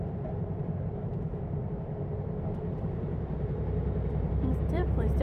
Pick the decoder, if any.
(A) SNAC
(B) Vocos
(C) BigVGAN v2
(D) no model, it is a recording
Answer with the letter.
C